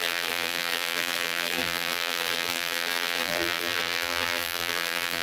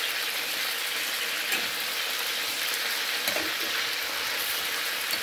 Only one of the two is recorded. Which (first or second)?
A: second